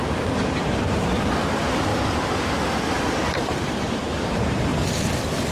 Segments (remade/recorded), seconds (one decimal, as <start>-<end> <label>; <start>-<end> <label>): 0.0-1.9 remade; 1.9-2.9 recorded; 2.9-4.7 remade; 4.7-5.5 recorded